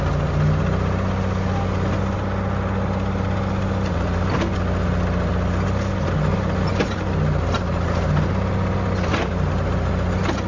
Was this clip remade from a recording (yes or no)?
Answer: no